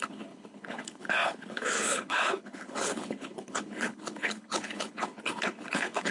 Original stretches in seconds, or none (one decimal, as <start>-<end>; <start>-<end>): none